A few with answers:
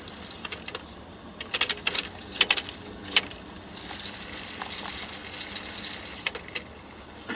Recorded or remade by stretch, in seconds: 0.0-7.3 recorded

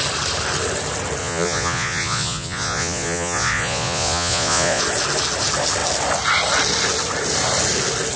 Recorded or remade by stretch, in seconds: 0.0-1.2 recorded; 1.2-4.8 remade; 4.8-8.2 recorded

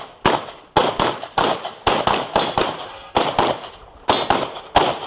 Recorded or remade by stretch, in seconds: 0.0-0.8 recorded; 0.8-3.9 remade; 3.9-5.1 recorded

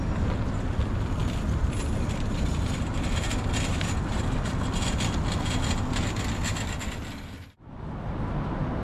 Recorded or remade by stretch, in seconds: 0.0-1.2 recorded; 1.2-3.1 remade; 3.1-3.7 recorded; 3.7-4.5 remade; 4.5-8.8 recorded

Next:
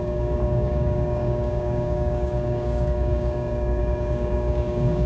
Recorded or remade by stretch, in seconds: 0.0-5.1 remade

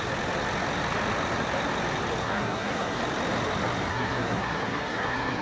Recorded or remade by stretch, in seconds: 0.0-2.2 recorded; 2.2-3.0 remade; 3.0-3.9 recorded; 3.9-5.4 remade

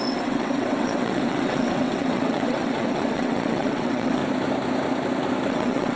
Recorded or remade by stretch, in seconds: 0.0-4.2 remade; 4.2-5.5 recorded; 5.5-6.0 remade

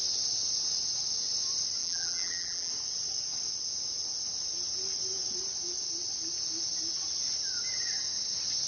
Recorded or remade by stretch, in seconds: 0.0-1.8 recorded; 1.8-2.7 remade; 2.7-8.7 recorded